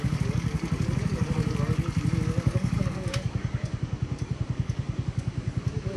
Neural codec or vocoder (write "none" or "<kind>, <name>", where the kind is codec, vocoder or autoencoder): codec, DAC